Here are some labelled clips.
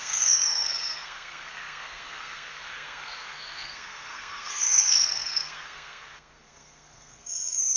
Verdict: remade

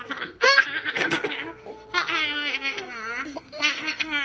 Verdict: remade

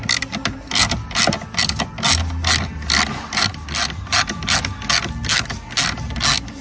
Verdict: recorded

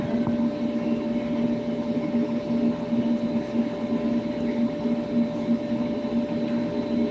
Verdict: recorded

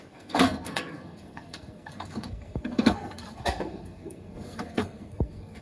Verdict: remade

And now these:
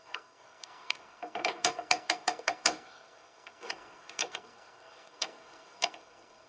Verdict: remade